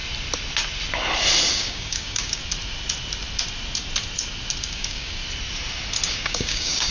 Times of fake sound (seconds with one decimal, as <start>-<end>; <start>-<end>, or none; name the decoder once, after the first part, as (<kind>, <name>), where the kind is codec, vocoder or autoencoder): 1.5-2.4 (codec, DAC); 4.6-5.2; 6.1-6.9